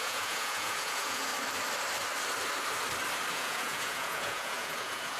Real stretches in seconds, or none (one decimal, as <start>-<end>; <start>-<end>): 1.3-3.3